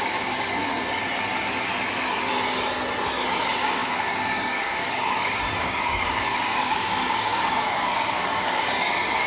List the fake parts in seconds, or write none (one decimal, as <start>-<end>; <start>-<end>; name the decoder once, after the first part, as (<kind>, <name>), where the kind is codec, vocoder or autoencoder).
0.0-0.6 (codec, DAC); 3.3-9.3